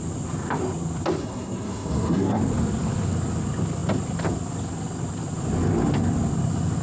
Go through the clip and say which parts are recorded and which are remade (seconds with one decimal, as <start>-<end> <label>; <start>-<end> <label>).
0.0-1.2 recorded; 1.2-2.4 remade; 2.4-6.8 recorded